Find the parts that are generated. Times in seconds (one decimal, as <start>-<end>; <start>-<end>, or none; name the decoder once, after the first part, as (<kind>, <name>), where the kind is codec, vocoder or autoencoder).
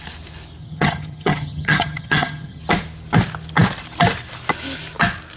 0.6-2.6 (vocoder, HiFi-GAN)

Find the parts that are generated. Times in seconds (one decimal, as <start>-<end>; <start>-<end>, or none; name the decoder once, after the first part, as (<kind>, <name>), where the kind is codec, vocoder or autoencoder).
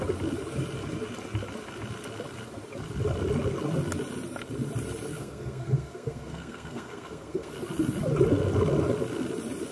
5.1-7.5 (codec, SNAC)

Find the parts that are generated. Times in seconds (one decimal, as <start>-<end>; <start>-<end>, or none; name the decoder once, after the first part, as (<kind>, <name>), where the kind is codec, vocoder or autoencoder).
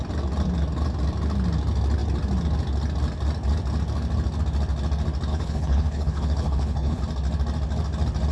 5.3-7.0 (codec, HILCodec)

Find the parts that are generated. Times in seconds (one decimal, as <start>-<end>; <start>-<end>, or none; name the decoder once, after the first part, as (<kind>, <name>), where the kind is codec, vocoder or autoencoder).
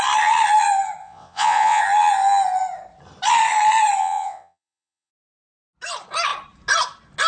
1.0-1.8 (vocoder, WaveNeXt); 4.0-5.1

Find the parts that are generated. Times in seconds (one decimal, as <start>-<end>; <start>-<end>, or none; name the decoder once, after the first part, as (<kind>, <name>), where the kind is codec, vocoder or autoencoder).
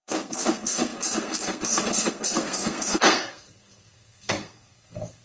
0.0-5.2 (codec, SNAC)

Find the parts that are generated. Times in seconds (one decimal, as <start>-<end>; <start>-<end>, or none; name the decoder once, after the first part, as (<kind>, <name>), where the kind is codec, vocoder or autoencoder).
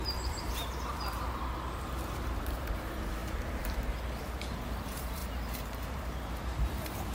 0.0-7.1 (vocoder, BigVGAN v2)